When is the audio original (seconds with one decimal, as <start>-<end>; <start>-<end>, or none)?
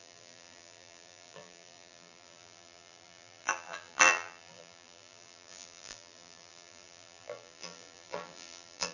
none